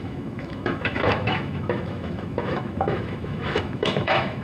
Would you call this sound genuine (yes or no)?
no